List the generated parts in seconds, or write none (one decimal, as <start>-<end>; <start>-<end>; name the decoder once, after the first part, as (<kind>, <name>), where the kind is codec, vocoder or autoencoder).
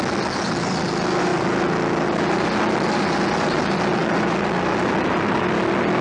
none